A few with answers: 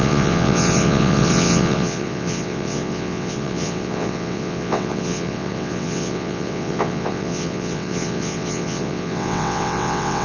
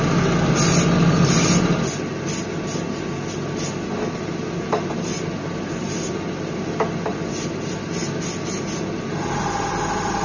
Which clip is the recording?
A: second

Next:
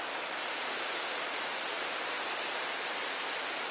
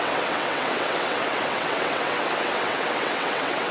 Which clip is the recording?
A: first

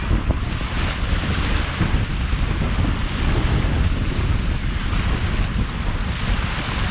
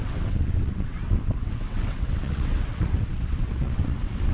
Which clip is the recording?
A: first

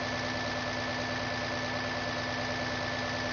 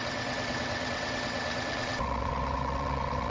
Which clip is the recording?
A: first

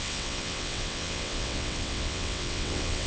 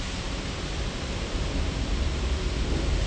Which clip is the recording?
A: second